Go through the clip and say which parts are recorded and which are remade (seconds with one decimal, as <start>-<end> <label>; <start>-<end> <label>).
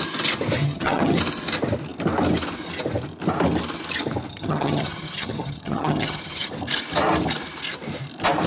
0.0-0.6 recorded; 0.6-1.2 remade; 1.2-4.3 recorded; 4.3-6.5 remade; 6.5-8.5 recorded